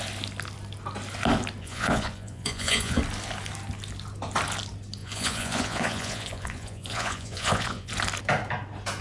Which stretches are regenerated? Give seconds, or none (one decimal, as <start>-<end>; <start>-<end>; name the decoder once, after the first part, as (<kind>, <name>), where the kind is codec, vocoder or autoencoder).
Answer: 1.6-3.0 (vocoder, Vocos); 5.0-7.9